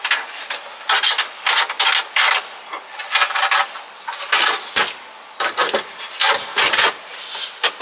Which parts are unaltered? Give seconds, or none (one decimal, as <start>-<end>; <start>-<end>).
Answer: 0.0-6.5; 7.1-7.8